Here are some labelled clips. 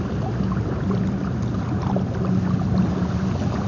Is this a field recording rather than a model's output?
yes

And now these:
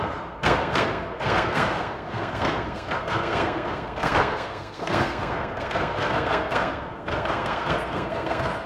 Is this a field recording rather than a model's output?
no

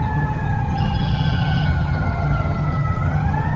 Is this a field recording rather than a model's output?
no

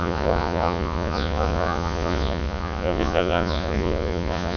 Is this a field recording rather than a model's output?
no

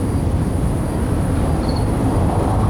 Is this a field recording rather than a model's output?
no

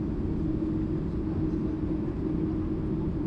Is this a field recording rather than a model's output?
yes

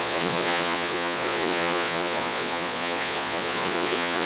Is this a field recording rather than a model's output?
no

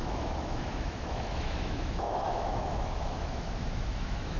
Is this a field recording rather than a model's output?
no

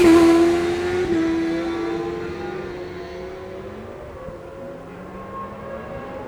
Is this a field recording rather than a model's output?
yes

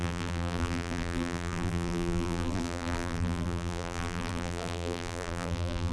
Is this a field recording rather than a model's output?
no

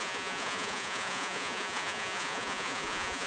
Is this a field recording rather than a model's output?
no